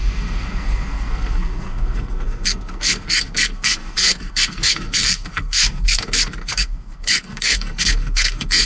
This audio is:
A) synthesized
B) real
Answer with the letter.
A